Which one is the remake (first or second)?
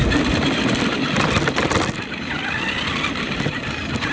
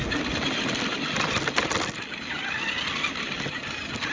first